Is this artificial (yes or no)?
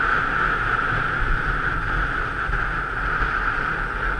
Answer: no